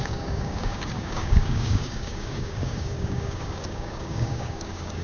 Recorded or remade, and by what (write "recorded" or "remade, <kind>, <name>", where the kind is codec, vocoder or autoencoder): remade, codec, DAC